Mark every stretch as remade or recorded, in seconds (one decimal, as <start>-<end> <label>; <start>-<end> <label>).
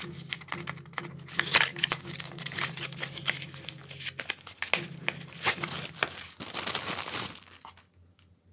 0.0-1.7 recorded; 1.7-3.2 remade; 3.2-8.5 recorded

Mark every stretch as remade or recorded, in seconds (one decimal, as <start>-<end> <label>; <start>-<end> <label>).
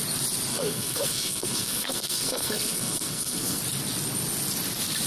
0.0-0.5 recorded; 0.5-3.6 remade; 3.6-5.1 recorded